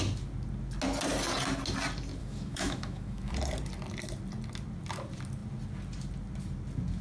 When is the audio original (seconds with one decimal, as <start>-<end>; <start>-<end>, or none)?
0.0-2.2; 3.3-7.0